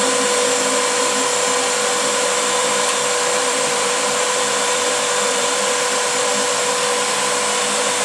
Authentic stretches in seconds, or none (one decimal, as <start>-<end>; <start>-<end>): 0.0-2.6; 5.6-8.0